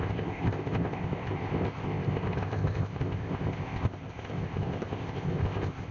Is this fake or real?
fake